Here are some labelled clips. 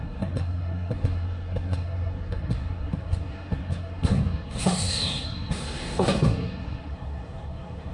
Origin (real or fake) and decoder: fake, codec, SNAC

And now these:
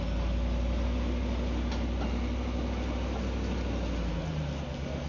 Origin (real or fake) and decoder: real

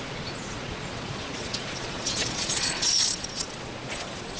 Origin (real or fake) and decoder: fake, vocoder, Vocos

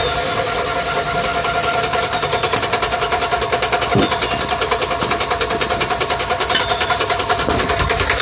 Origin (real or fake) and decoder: real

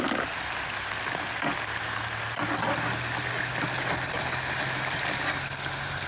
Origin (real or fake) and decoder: real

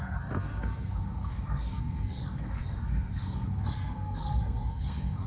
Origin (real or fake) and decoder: fake, codec, SNAC